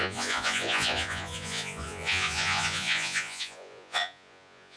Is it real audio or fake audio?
fake